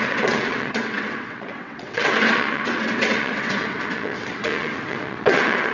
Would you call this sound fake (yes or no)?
yes